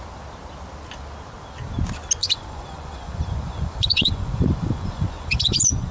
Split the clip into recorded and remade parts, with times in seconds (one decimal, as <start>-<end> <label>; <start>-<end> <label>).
0.0-2.2 recorded; 2.2-5.9 remade